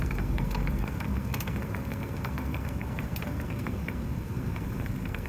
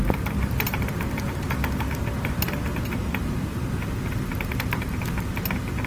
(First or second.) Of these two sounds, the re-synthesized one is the first